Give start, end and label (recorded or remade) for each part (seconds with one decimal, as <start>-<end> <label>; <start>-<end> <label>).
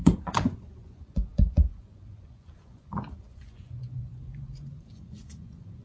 0.0-5.8 remade